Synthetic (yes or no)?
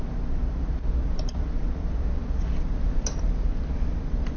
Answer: no